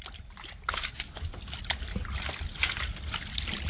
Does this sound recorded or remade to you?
recorded